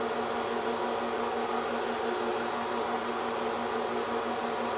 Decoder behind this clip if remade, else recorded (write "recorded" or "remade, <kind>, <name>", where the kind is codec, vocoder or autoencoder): recorded